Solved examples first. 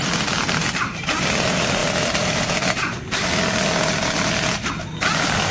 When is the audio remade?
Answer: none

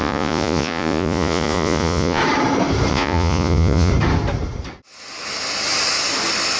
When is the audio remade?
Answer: 0.0-2.2 (vocoder, Vocos); 2.9-3.9

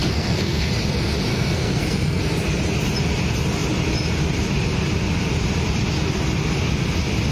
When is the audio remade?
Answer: 0.0-0.7 (codec, SNAC); 1.3-2.2

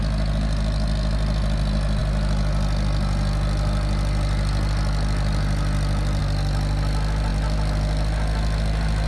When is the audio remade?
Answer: none